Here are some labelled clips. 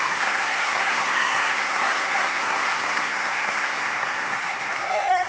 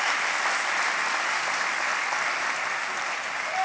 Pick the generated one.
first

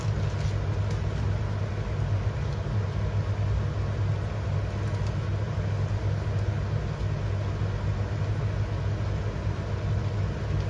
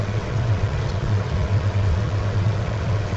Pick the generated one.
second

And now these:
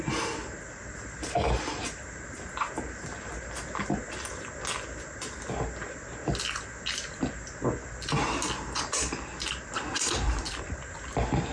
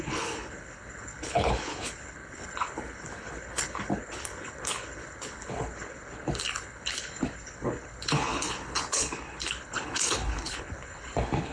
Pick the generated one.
second